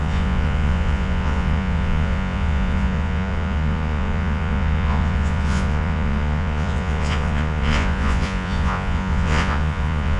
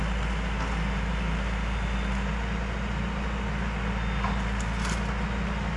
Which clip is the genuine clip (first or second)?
second